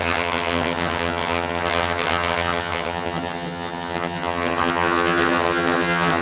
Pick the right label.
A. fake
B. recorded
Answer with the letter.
A